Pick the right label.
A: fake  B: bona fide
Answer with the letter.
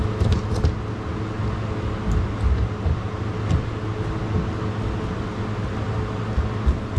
B